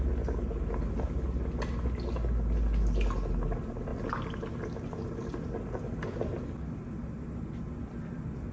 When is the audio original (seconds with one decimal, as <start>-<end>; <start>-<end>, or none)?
0.0-8.5